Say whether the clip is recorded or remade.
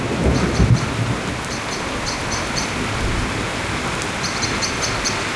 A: recorded